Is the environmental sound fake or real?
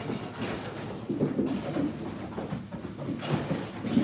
real